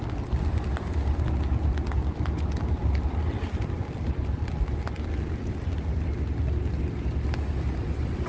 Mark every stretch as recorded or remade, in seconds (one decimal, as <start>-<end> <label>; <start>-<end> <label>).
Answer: 0.0-8.3 recorded